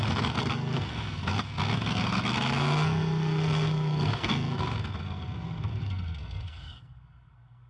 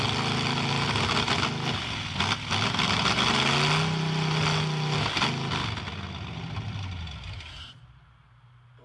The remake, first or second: first